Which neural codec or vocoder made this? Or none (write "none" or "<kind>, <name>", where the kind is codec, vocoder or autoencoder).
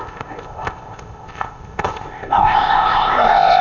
codec, ZipCodec